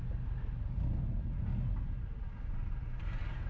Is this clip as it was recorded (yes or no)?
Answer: yes